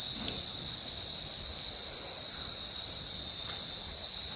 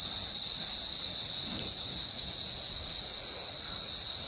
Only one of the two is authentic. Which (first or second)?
first